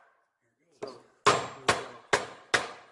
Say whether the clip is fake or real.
real